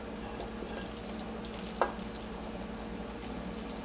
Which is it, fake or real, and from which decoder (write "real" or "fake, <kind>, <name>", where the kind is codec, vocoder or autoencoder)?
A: real